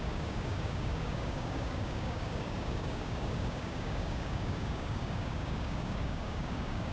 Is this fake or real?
fake